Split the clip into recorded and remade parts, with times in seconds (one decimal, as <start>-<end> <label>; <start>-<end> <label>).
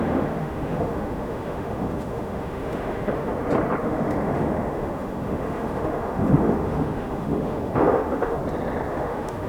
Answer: 0.0-3.3 remade; 3.3-3.8 recorded; 3.8-8.4 remade; 8.4-8.9 recorded; 8.9-9.5 remade